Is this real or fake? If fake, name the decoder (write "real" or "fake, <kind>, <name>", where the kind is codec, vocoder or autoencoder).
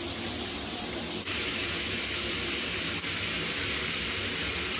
real